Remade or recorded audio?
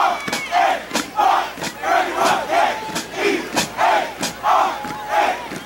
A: recorded